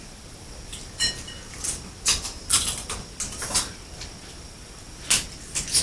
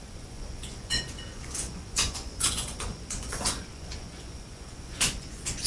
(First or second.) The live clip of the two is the first